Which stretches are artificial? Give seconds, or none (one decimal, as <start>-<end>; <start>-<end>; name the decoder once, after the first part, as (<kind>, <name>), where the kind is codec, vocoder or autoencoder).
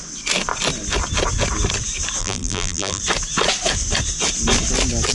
2.2-3.0 (vocoder, BigVGAN v2)